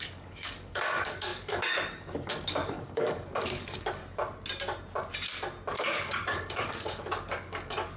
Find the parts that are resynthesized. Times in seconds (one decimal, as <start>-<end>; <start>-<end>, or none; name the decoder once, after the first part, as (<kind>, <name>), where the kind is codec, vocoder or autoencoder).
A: 0.0-4.0 (codec, DAC); 5.7-8.0